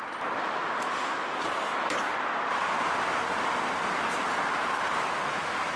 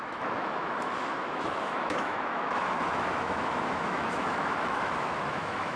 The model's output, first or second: second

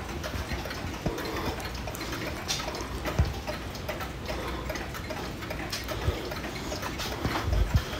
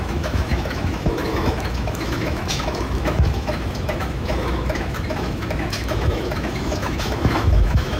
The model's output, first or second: second